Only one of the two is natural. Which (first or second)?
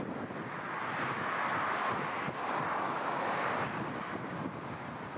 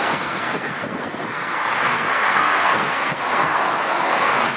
first